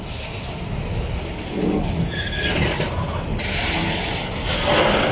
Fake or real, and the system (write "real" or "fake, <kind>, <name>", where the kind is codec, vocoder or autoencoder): real